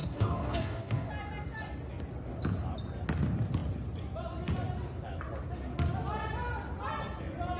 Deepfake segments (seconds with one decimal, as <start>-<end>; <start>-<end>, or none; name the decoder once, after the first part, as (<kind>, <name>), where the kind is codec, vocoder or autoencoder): 0.0-1.1 (codec, DAC)